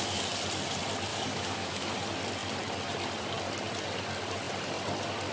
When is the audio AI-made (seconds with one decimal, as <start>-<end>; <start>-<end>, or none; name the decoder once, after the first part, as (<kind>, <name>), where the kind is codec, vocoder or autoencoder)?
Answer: 1.1-1.9 (codec, DAC)